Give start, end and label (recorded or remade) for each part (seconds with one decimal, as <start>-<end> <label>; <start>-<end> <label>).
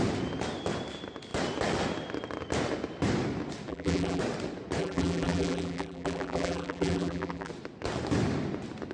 0.0-3.7 recorded; 3.7-4.2 remade; 4.2-4.8 recorded; 4.8-7.5 remade; 7.5-8.9 recorded